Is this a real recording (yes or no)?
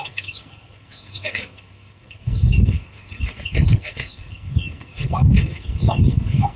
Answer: no